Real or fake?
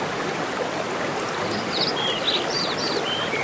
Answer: real